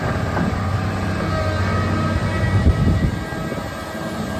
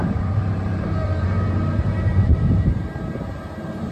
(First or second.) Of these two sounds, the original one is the first